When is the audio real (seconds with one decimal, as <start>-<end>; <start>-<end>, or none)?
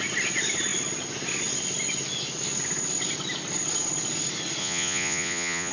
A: 0.0-4.6